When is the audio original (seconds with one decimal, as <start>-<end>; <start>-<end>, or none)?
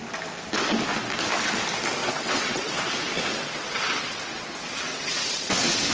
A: 0.0-2.0; 2.8-3.3; 4.5-4.9